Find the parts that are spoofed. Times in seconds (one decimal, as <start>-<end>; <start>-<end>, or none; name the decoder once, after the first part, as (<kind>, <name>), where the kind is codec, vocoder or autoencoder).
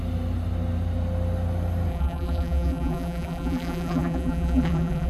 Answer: 1.9-5.1 (vocoder, BigVGAN v2)